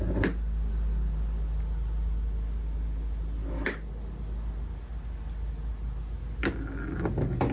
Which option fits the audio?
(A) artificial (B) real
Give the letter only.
B